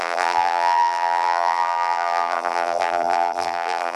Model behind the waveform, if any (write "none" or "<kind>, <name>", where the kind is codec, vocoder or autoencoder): vocoder, BigVGAN v2